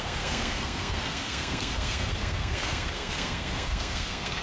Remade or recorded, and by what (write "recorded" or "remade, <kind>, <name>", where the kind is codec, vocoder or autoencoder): remade, codec, SNAC